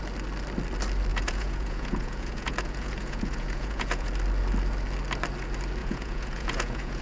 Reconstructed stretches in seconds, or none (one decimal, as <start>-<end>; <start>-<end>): 1.1-4.1; 5.8-7.0